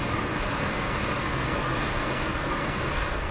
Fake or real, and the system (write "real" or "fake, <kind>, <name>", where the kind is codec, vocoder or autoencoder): fake, codec, SNAC